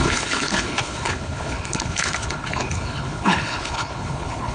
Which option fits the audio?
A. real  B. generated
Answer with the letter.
B